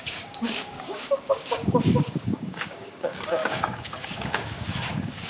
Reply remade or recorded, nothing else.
remade